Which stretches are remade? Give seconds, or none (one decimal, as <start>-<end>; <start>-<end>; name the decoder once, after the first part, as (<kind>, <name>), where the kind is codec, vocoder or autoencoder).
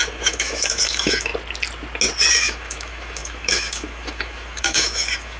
0.0-1.3 (autoencoder, DAC-VAE); 2.3-5.4